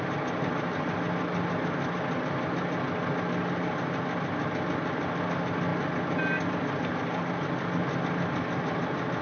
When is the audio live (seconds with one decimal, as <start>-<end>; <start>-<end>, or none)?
0.0-9.2